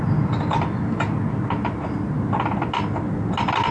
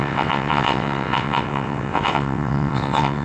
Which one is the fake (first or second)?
second